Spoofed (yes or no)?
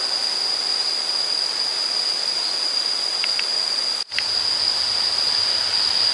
no